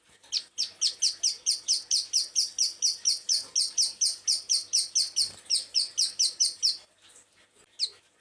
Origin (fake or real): real